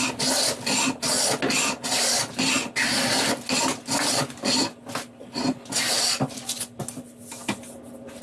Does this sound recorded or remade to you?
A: recorded